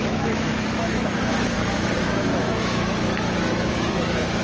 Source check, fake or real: fake